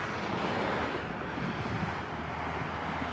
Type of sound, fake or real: real